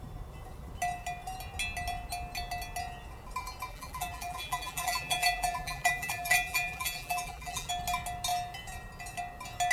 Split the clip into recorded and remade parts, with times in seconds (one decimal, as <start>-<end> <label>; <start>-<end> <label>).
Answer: 0.0-3.7 recorded; 3.7-7.7 remade; 7.7-9.7 recorded